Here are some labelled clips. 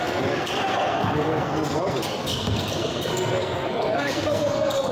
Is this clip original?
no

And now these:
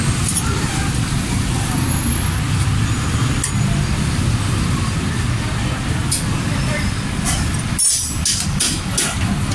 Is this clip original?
yes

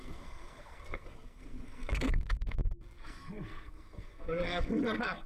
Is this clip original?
no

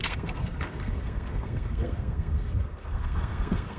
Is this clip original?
no